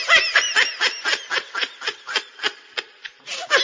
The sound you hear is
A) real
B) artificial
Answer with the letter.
A